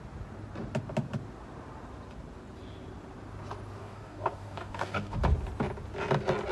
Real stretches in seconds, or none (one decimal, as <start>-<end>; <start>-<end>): 0.0-3.8; 5.2-6.5